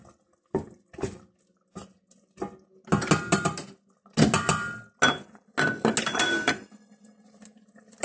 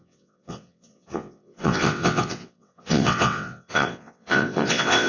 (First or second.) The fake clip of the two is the second